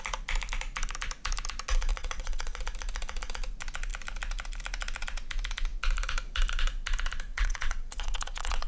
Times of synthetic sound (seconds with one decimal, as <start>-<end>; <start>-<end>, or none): 1.9-2.6; 7.3-8.7

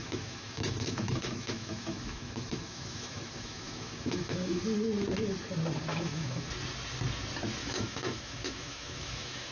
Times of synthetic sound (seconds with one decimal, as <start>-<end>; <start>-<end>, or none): 0.0-4.6; 5.9-6.5; 7.6-9.5

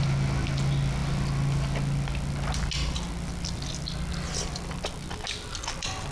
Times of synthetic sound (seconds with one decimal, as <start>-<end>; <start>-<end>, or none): none

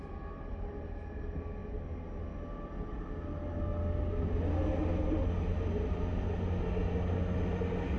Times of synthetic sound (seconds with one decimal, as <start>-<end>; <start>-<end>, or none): none

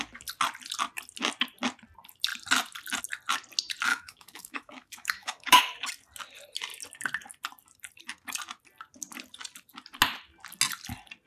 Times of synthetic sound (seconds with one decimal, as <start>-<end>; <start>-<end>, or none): 3.9-5.6

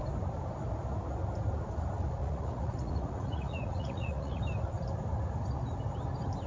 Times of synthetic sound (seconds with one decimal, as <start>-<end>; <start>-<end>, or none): 2.2-4.4